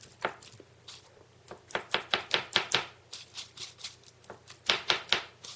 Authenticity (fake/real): real